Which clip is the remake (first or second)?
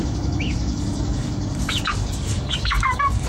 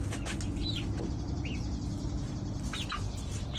first